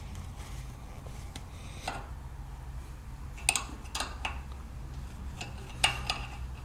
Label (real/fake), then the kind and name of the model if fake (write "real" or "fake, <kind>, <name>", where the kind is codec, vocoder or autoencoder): real